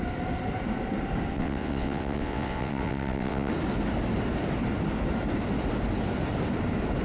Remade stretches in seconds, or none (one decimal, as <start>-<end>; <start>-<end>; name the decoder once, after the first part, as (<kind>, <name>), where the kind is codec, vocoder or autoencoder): 1.3-3.5 (vocoder, WaveNeXt)